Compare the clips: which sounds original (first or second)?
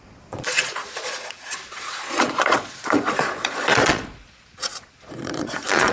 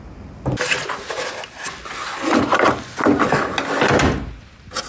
second